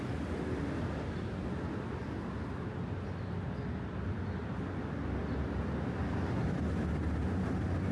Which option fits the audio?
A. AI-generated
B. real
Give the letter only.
B